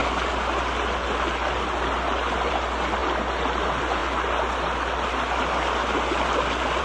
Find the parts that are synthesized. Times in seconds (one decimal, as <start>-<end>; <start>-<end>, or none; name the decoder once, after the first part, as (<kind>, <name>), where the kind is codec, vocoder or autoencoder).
none